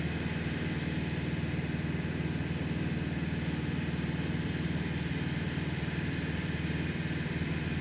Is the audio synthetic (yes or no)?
no